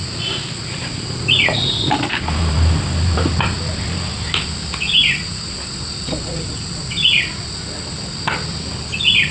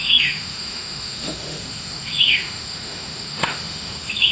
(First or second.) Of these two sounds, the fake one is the second